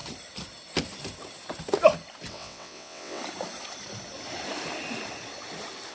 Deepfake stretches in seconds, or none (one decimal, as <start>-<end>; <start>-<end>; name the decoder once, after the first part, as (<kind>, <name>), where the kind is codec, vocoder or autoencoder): 2.3-3.2 (vocoder, WaveNeXt)